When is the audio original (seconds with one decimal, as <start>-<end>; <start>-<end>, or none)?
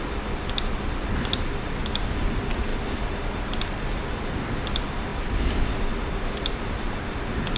0.0-7.6